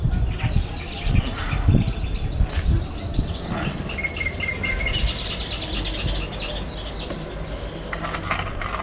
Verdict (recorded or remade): recorded